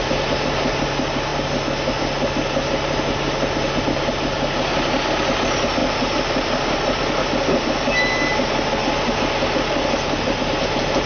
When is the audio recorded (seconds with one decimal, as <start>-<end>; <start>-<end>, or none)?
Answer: 0.0-11.1

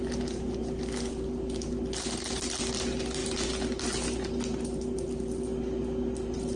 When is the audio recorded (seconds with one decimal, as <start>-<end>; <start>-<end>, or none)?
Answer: 0.0-6.6

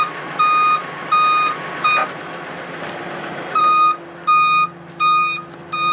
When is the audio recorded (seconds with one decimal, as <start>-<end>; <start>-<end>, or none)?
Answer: 0.0-5.9

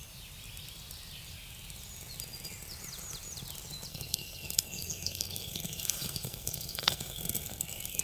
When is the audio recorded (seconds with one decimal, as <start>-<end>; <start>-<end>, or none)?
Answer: 0.0-3.9

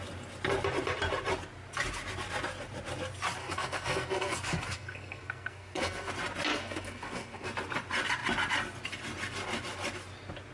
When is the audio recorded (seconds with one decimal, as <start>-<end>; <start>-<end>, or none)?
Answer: 0.0-3.4; 6.1-6.5; 7.5-10.5